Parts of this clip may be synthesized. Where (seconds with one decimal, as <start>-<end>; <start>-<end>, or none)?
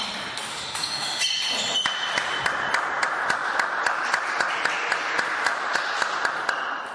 0.5-1.2